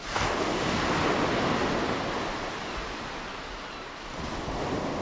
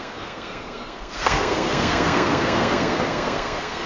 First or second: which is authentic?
first